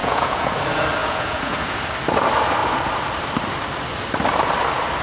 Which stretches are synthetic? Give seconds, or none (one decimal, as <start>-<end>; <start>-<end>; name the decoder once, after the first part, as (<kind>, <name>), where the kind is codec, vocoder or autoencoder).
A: 0.0-0.5 (vocoder, Vocos); 1.0-1.8